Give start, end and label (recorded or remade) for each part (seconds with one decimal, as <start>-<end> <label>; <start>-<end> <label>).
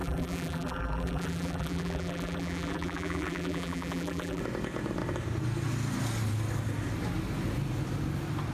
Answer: 0.0-4.4 remade; 4.4-8.5 recorded